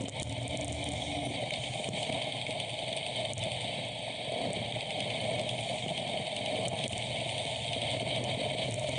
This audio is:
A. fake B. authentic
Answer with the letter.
B